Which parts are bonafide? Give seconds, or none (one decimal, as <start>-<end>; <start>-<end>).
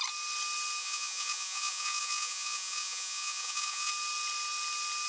0.0-0.8; 3.9-5.1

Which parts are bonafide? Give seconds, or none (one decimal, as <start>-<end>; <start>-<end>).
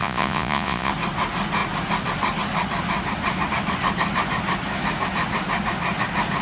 0.9-6.4